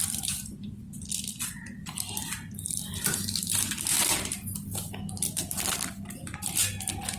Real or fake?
real